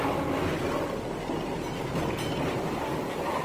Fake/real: real